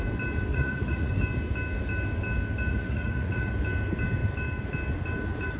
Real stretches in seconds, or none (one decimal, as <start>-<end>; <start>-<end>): 0.0-0.5; 1.1-2.7; 3.5-5.6